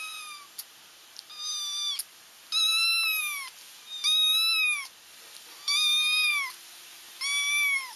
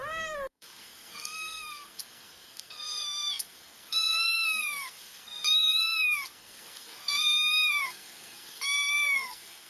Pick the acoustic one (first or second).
first